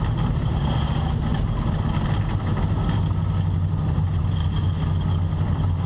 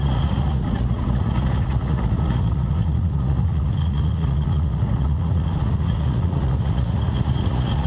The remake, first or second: second